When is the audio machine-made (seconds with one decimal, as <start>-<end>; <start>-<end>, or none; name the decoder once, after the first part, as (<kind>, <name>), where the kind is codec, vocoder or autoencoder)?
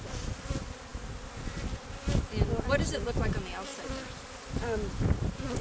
none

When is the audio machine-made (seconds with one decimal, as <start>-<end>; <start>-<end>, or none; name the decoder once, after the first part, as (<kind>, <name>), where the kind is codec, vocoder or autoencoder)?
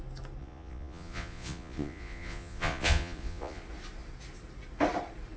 0.4-3.6 (vocoder, Vocos)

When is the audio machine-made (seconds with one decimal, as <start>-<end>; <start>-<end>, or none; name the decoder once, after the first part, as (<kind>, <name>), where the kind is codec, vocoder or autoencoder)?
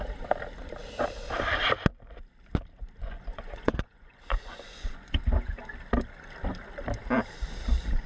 3.0-5.6 (vocoder, Vocos)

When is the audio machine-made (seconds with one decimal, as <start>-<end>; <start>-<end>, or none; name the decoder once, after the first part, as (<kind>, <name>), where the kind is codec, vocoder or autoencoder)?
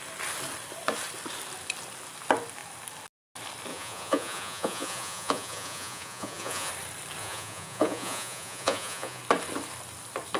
3.7-6.7 (vocoder, Vocos); 7.2-9.2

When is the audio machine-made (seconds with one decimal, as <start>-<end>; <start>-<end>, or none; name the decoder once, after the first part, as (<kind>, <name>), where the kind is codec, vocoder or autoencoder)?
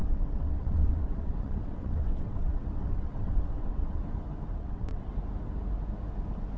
0.0-4.0 (vocoder, WaveNeXt); 4.5-5.1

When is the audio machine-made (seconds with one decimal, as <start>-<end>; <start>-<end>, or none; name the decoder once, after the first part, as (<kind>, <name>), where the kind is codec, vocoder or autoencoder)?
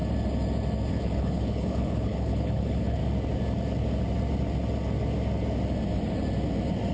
0.9-3.0 (codec, HILCodec)